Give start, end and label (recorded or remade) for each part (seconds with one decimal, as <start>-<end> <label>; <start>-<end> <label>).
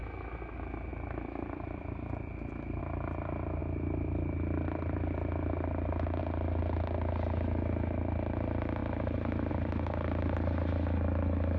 0.0-11.6 recorded